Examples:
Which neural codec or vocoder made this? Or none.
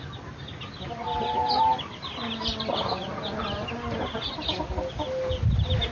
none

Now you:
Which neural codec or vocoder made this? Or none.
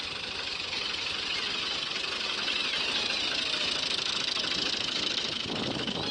none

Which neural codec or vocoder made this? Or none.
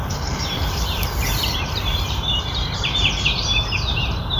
vocoder, BigVGAN v2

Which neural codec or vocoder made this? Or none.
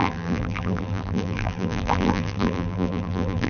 vocoder, BigVGAN v2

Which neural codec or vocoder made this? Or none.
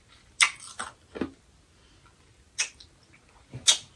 none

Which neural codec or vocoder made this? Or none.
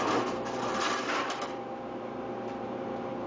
vocoder, BigVGAN v2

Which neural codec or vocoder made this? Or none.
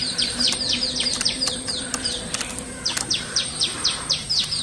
vocoder, BigVGAN v2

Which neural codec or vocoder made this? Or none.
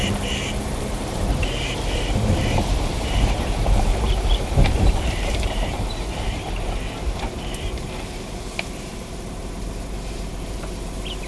vocoder, BigVGAN v2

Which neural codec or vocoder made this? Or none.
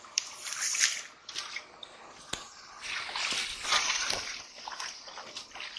vocoder, BigVGAN v2